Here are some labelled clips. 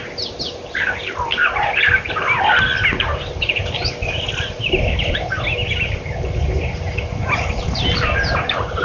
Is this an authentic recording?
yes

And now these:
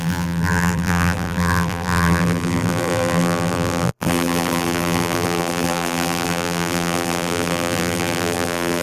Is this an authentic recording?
no